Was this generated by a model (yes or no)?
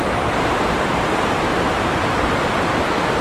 yes